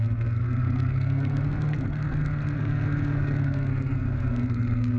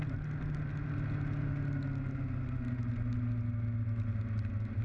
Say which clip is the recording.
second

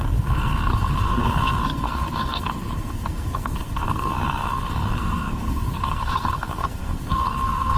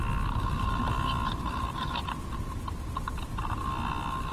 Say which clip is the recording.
second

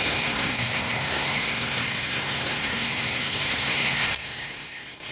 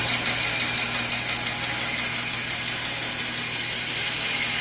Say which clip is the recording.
second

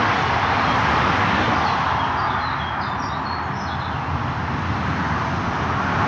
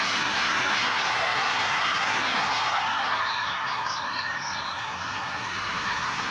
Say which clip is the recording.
first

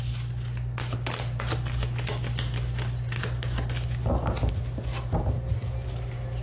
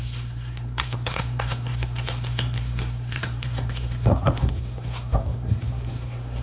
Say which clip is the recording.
first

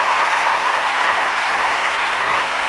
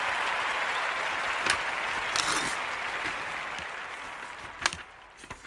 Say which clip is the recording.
second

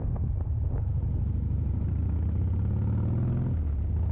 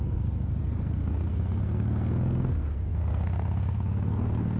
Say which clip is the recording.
first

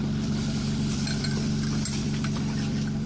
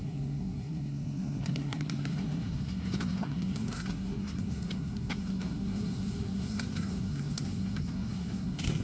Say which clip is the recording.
first